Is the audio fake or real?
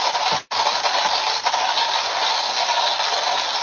real